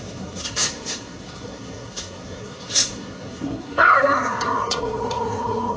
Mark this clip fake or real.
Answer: fake